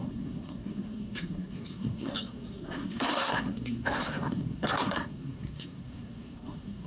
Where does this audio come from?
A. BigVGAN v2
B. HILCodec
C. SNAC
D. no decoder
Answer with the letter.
C